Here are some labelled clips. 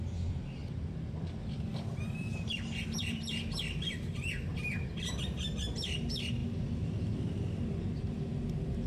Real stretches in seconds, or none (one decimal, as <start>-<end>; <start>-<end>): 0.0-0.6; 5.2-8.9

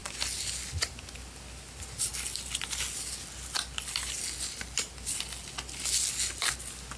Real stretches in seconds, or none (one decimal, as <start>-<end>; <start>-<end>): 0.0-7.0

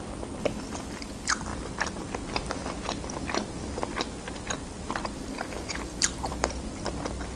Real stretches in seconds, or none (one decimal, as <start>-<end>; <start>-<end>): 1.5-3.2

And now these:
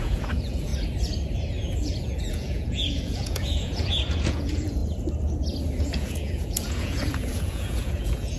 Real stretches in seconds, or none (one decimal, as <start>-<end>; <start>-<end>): 0.7-1.8; 4.8-5.8

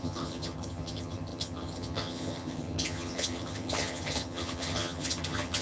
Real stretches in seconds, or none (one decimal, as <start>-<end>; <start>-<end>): none

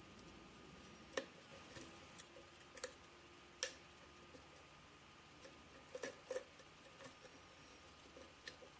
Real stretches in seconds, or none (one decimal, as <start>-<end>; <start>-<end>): 0.0-1.5; 2.2-7.3; 7.9-8.8